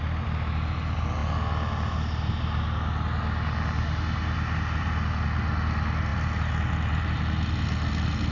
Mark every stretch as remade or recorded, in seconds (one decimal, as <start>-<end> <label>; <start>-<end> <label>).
0.0-8.3 recorded